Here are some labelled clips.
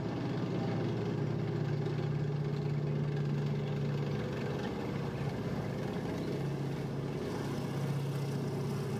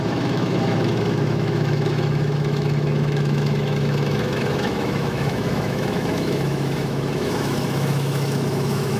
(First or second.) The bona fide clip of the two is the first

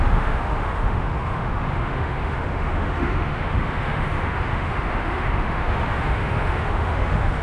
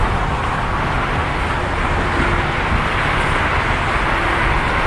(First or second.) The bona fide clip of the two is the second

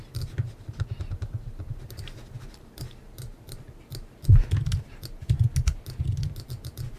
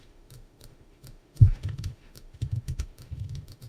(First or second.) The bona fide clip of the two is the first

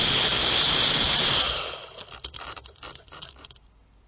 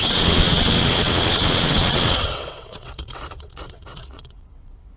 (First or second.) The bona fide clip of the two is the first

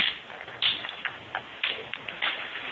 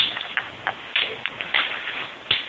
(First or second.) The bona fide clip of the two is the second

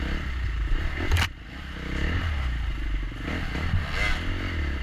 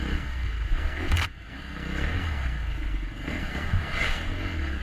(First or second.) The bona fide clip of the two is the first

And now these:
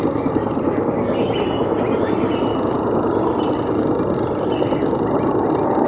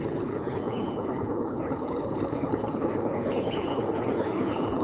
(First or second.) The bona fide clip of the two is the first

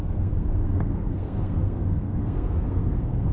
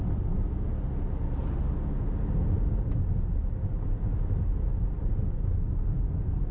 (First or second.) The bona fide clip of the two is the second